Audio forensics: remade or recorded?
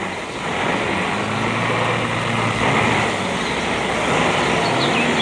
recorded